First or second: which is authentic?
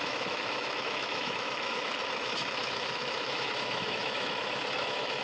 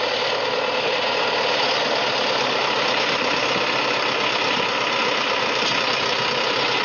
second